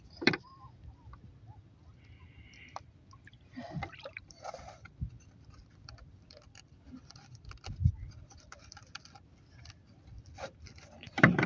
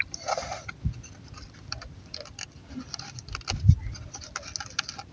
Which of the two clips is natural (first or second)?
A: second